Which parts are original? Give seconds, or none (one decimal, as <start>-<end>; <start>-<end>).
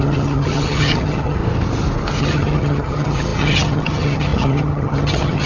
1.4-2.2